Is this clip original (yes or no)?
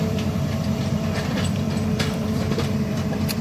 no